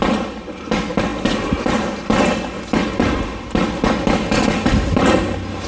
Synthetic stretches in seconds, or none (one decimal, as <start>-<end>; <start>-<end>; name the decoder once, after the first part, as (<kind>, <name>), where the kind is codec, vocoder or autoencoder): none